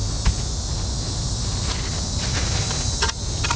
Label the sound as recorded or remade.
recorded